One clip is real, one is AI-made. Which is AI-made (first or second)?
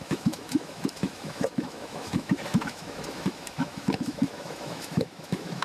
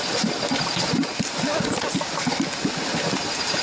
first